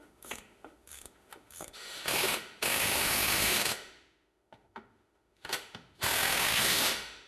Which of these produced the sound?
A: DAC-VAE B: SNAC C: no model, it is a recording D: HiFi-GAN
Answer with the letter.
A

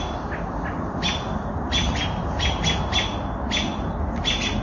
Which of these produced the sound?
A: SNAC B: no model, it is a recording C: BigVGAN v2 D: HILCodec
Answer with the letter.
B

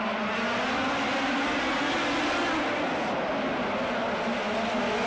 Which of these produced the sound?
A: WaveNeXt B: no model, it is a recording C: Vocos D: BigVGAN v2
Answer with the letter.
B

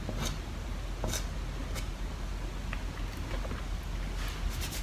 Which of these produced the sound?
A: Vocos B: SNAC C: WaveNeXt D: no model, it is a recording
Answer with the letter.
D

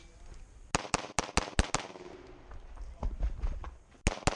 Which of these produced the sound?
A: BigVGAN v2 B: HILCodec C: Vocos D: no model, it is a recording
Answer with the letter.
D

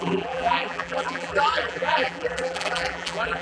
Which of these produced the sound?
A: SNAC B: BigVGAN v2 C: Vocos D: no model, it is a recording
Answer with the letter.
B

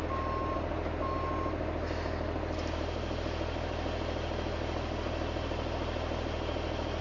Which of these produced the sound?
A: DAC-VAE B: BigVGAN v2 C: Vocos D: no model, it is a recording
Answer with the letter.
D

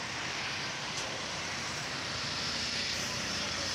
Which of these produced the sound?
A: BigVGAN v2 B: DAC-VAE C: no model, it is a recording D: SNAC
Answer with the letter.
A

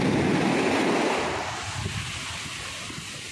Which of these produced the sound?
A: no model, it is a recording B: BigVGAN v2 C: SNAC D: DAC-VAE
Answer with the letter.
A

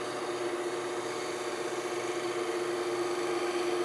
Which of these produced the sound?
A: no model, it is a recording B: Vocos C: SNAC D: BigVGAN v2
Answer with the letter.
A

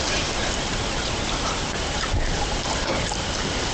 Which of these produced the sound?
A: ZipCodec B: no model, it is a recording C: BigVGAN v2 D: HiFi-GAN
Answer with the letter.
C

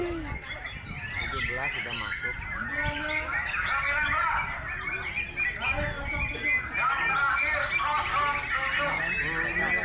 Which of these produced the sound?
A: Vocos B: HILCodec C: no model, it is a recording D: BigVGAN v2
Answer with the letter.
C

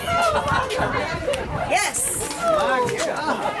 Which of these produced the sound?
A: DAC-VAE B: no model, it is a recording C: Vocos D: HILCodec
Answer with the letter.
B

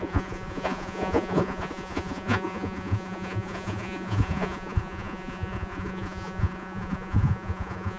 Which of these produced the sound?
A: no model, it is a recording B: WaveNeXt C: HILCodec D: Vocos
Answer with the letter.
D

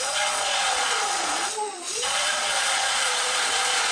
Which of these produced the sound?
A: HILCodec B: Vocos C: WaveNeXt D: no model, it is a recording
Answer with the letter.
B